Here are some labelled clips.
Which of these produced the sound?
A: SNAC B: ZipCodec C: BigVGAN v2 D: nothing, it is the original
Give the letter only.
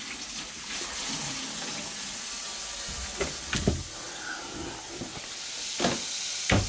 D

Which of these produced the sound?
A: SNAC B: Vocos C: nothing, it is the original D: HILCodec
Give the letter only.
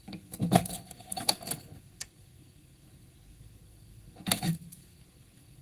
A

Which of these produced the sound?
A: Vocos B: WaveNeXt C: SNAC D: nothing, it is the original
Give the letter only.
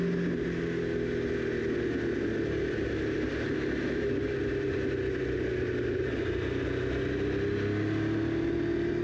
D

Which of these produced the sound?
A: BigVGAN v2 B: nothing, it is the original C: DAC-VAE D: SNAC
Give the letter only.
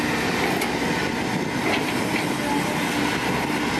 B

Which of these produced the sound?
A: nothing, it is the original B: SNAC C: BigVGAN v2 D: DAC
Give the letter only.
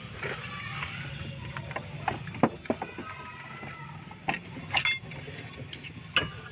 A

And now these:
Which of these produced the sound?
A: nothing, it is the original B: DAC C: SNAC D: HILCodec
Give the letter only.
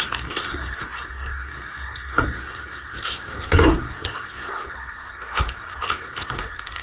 C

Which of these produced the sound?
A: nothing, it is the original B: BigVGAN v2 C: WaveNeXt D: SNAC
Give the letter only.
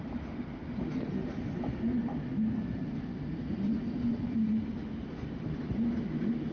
A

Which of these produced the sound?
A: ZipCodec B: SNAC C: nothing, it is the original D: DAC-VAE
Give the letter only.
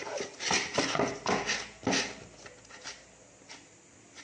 C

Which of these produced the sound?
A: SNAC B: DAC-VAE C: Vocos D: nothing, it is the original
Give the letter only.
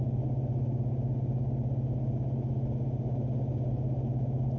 D